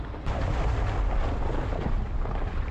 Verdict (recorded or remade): recorded